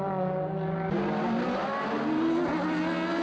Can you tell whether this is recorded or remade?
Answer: recorded